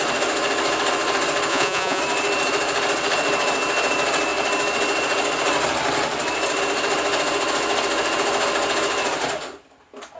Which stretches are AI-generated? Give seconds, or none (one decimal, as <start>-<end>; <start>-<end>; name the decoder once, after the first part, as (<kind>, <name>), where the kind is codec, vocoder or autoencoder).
1.5-2.0 (vocoder, Vocos)

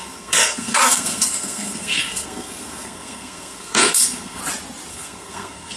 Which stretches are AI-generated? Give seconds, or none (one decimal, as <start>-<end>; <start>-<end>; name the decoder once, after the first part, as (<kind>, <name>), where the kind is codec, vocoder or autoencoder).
0.0-4.4 (codec, SNAC); 4.9-5.8

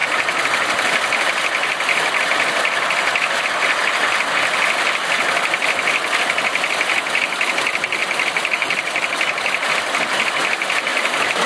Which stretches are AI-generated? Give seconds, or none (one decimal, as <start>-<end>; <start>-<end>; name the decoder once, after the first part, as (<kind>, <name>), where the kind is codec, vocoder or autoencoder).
0.0-3.4 (vocoder, BigVGAN v2); 8.0-9.7; 10.9-11.5

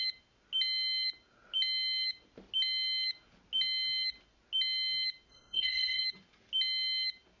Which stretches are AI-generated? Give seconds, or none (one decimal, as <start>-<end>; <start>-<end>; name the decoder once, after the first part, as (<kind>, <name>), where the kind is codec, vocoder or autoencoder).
5.3-6.0 (codec, SNAC)

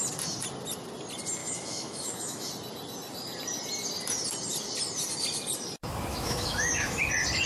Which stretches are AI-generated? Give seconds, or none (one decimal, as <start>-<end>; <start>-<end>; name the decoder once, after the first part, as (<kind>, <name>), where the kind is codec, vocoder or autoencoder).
1.4-2.5 (autoencoder, DAC-VAE); 6.1-7.0